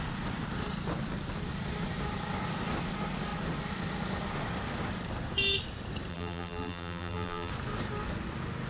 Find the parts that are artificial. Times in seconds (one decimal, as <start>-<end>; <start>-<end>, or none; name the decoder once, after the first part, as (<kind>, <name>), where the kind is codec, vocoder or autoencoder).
6.1-7.5 (vocoder, BigVGAN v2)